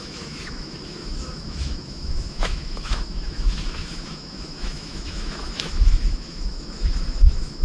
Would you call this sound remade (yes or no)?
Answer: yes